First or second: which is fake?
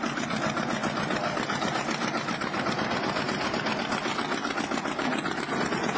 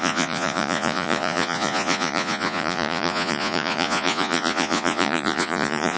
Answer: second